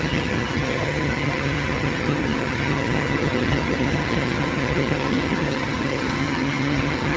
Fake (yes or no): yes